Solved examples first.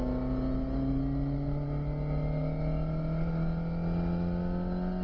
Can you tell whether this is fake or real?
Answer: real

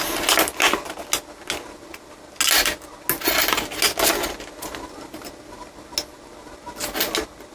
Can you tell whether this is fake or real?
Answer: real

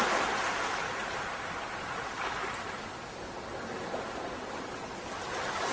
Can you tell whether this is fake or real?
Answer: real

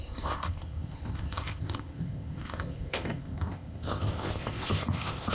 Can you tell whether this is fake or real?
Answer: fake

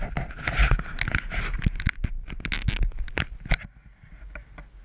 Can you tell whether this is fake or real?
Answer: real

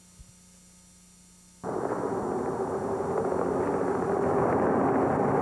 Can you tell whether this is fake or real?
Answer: real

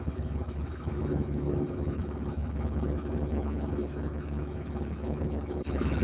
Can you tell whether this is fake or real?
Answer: fake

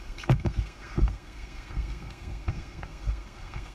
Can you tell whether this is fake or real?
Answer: fake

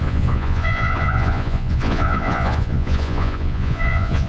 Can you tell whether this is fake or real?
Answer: fake